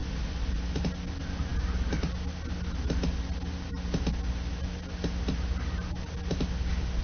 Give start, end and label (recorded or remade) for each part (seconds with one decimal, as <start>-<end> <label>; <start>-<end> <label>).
0.0-0.6 remade; 0.6-7.0 recorded